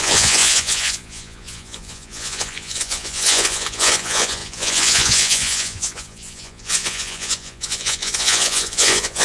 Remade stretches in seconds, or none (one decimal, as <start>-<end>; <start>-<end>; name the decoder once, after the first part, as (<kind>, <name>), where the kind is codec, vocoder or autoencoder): 0.0-9.2 (vocoder, Vocos)